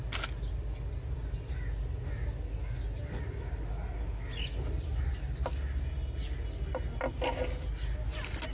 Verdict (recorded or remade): recorded